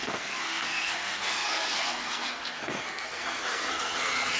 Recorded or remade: remade